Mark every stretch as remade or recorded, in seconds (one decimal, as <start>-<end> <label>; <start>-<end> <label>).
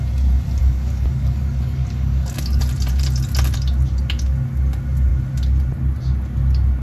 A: 0.0-0.6 recorded; 0.6-2.6 remade; 2.6-6.8 recorded